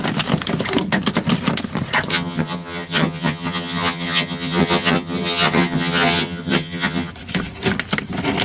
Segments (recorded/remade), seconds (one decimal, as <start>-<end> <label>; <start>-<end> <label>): 0.0-2.1 recorded; 2.1-7.1 remade; 7.1-8.4 recorded